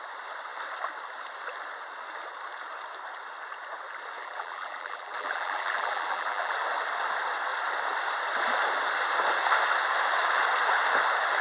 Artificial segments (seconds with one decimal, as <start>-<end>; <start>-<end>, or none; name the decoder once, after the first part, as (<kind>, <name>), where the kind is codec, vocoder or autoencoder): 4.2-6.5 (vocoder, BigVGAN v2)